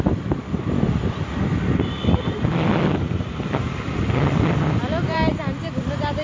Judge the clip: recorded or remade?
remade